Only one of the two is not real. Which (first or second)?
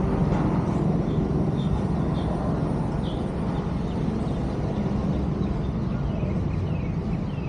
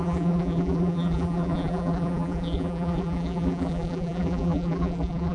second